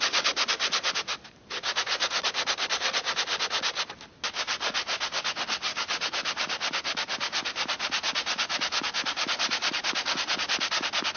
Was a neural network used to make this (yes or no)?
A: no